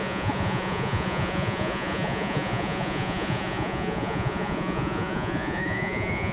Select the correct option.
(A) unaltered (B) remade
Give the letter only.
B